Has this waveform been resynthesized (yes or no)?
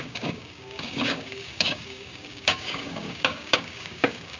yes